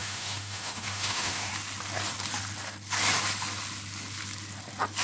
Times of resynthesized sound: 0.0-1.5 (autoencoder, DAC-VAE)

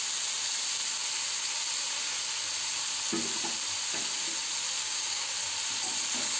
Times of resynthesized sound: 4.8-5.3 (codec, DAC)

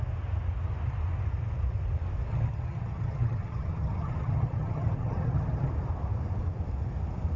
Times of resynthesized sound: 2.3-5.7 (vocoder, HiFi-GAN)

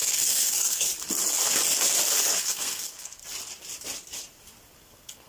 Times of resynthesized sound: 0.0-0.9 (codec, SNAC); 2.4-3.2; 4.8-5.3